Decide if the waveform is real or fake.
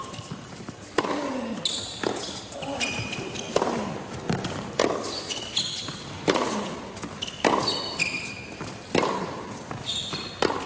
real